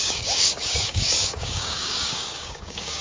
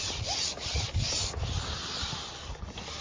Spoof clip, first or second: first